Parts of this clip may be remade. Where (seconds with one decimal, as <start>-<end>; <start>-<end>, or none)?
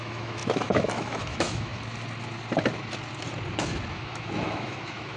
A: 0.0-1.7; 3.9-5.2